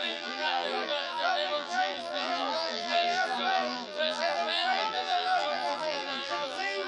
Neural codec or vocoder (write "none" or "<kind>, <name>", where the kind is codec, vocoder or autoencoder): vocoder, BigVGAN v2